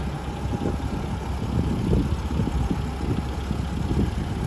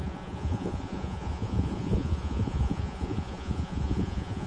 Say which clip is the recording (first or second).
first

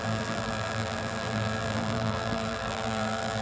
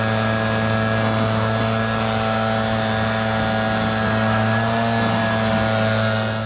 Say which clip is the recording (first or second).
second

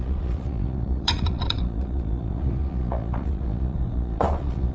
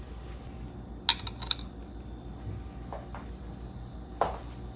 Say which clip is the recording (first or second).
second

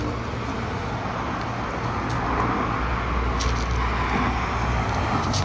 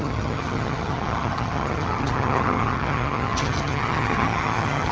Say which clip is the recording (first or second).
first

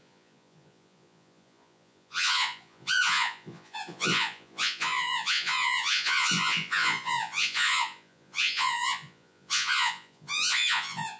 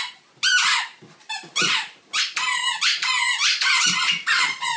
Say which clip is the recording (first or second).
second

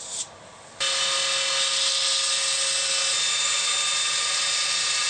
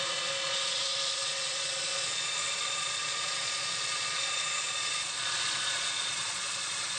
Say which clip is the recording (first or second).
first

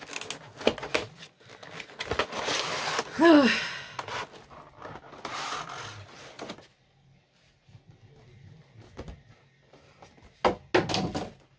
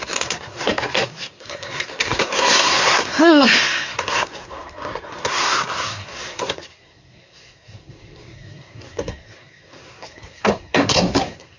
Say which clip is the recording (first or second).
first